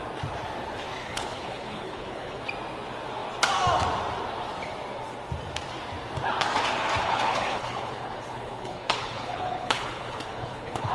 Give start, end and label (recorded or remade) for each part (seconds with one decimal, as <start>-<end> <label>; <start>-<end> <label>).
0.0-1.0 recorded; 1.0-2.4 remade; 2.4-7.0 recorded; 7.0-10.9 remade